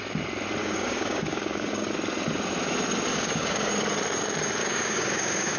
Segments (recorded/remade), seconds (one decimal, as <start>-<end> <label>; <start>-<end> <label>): 0.0-0.6 recorded; 0.6-1.9 remade; 1.9-3.1 recorded; 3.1-3.7 remade; 3.7-4.6 recorded; 4.6-5.6 remade